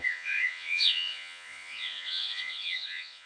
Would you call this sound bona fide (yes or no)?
no